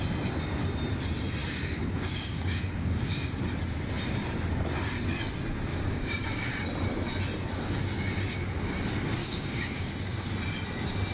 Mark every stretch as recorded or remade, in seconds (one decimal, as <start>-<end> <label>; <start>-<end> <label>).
0.0-1.4 recorded; 1.4-3.4 remade; 3.4-5.7 recorded; 5.7-6.5 remade; 6.5-9.2 recorded; 9.2-9.9 remade; 9.9-11.1 recorded